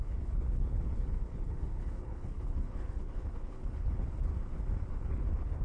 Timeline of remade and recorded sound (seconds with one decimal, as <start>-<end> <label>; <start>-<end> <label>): 0.0-4.3 remade; 4.3-4.9 recorded; 4.9-5.6 remade